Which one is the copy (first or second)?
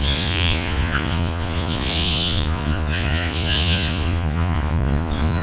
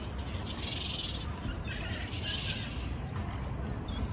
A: first